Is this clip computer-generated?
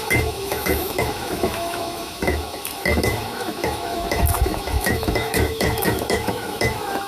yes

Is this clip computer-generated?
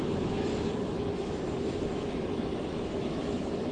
yes